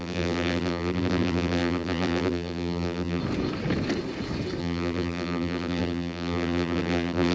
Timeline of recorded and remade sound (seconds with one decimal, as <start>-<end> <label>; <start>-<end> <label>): 0.0-3.2 remade; 3.2-4.6 recorded; 4.6-7.3 remade

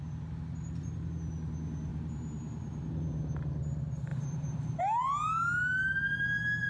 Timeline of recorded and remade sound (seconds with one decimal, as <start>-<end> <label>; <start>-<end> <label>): 0.0-1.9 recorded; 1.9-2.9 remade; 2.9-4.1 recorded; 4.1-4.8 remade; 4.8-6.7 recorded

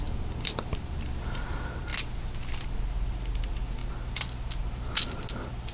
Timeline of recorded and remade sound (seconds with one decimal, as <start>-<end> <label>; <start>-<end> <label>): 0.0-1.9 remade; 1.9-3.4 recorded; 3.4-3.8 remade; 3.8-5.3 recorded; 5.3-5.7 remade

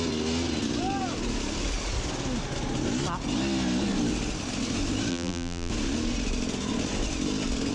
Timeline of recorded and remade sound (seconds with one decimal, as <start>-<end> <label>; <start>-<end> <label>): 0.0-5.1 recorded; 5.1-5.7 remade; 5.7-7.7 recorded

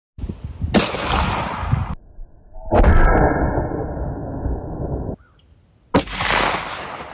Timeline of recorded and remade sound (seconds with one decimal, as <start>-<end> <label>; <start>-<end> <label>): 0.0-7.1 recorded

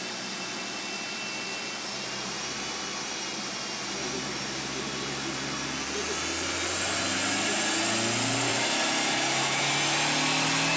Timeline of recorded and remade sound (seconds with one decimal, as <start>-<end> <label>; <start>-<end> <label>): 0.0-8.5 recorded; 8.5-9.6 remade; 9.6-10.8 recorded

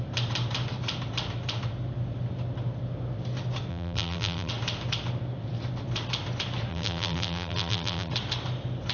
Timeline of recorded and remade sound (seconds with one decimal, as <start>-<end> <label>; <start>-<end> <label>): 0.0-3.7 recorded; 3.7-4.5 remade; 4.5-6.7 recorded; 6.7-8.1 remade; 8.1-8.9 recorded

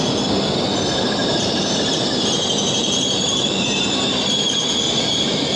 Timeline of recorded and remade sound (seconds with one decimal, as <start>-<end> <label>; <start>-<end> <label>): 0.0-1.2 recorded; 1.2-4.6 remade; 4.6-5.6 recorded